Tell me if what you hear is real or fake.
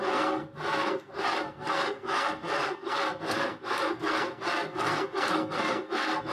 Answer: fake